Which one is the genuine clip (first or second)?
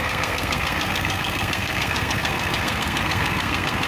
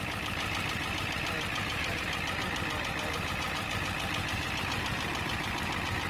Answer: second